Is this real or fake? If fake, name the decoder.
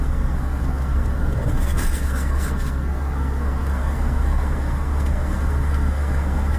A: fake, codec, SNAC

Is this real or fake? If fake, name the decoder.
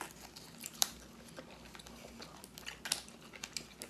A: real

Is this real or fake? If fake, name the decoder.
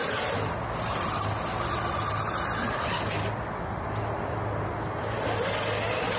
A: real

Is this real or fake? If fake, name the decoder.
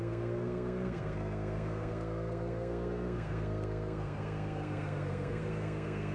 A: fake, codec, SNAC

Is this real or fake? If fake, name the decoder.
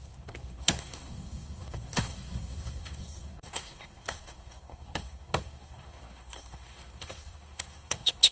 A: fake, codec, SNAC